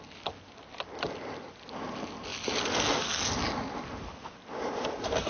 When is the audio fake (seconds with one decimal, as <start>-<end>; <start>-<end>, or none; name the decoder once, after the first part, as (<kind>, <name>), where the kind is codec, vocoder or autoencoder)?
none